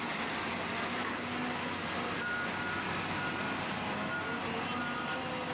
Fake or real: real